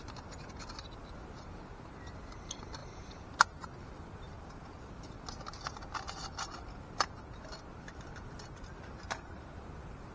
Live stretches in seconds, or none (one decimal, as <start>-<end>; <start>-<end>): 0.0-10.1